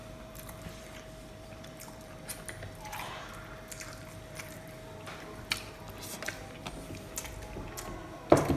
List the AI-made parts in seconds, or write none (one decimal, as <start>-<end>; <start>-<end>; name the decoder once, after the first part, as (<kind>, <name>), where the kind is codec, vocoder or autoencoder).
0.0-2.2 (vocoder, BigVGAN v2); 4.0-5.5